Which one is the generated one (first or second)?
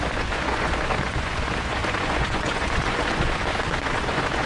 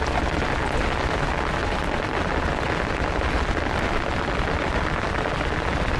first